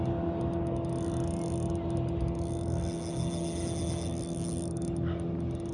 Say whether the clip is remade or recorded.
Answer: recorded